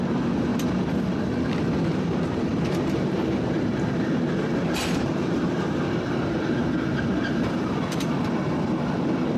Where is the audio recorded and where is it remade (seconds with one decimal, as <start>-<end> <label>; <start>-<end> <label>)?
0.0-2.5 recorded; 2.5-4.1 remade; 4.1-4.5 recorded; 4.5-7.8 remade; 7.8-9.4 recorded